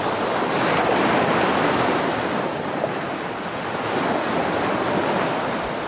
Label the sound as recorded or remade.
recorded